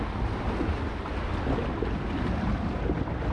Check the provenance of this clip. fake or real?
real